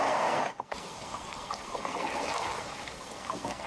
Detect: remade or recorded remade